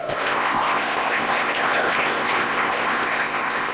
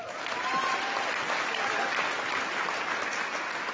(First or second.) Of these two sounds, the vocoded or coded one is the first